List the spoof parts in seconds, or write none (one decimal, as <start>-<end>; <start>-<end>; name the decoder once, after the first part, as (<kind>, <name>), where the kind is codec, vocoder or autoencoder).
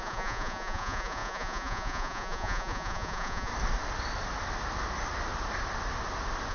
0.0-3.5 (vocoder, Vocos)